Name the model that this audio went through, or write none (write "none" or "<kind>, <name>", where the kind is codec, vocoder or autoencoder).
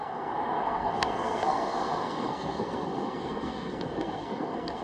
codec, SNAC